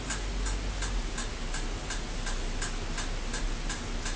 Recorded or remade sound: recorded